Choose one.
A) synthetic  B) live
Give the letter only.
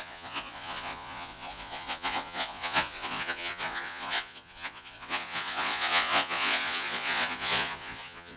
A